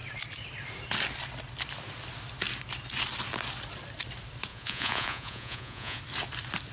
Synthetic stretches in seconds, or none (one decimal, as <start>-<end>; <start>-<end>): 4.5-6.0